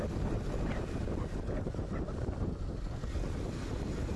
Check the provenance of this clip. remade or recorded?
recorded